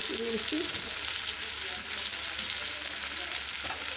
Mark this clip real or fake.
real